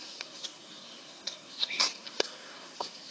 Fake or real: fake